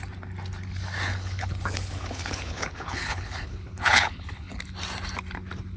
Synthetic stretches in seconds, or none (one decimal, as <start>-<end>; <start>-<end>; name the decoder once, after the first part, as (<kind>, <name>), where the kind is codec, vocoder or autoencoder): 1.1-4.6 (codec, HILCodec)